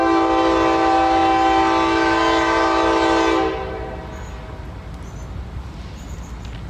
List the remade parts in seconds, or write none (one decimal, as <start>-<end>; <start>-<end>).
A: none